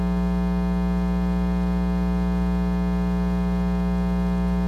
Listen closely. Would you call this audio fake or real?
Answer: real